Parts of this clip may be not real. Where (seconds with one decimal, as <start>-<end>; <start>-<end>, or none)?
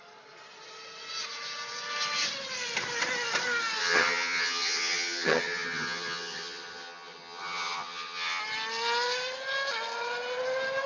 3.8-8.4